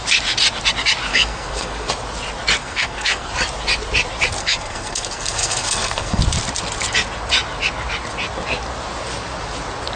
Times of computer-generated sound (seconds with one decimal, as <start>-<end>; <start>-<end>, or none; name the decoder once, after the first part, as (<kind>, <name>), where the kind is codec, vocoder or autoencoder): 1.1-1.9 (codec, SNAC); 2.6-3.3; 4.4-6.2